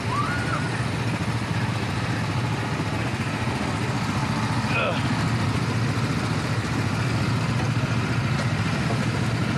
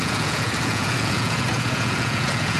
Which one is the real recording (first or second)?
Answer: first